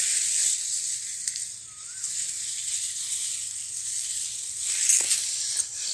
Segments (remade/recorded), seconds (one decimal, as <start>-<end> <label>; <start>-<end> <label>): 0.0-0.4 recorded; 0.4-1.4 remade; 1.4-5.9 recorded